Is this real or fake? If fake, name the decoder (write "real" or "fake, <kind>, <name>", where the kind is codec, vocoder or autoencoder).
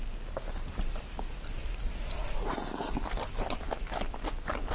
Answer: real